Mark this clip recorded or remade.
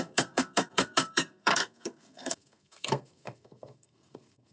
remade